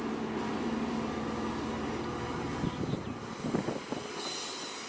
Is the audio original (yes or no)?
yes